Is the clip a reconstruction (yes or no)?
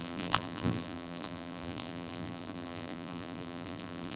yes